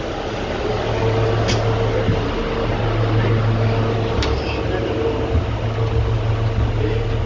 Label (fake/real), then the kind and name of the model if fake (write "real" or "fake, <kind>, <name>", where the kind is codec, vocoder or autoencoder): real